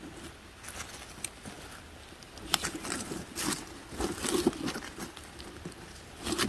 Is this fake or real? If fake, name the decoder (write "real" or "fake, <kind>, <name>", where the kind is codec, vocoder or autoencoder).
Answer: real